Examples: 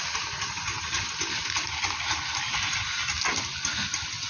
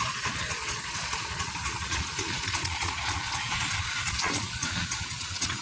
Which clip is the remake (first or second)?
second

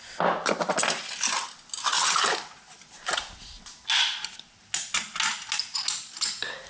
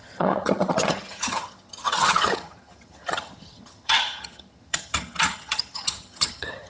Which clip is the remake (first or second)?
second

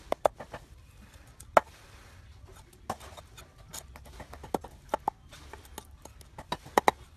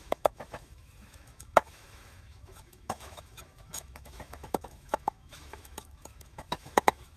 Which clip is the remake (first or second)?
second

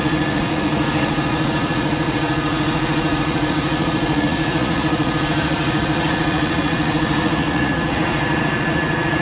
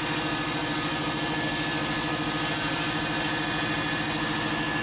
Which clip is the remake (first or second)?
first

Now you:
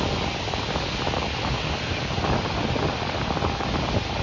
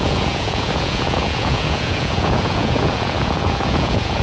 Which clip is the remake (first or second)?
second